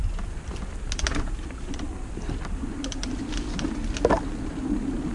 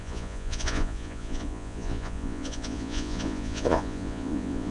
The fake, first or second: second